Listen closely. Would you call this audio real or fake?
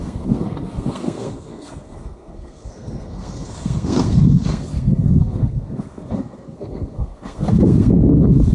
fake